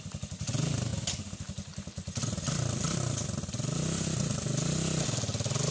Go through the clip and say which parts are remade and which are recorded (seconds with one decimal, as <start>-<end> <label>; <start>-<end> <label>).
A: 0.0-5.7 recorded